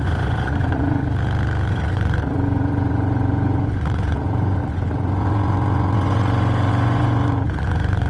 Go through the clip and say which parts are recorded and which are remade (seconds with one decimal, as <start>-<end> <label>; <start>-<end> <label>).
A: 0.0-1.0 remade; 1.0-1.7 recorded; 1.7-8.1 remade